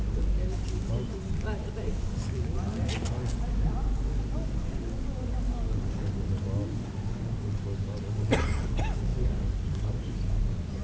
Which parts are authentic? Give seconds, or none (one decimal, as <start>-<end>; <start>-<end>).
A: 0.0-9.1; 9.8-10.8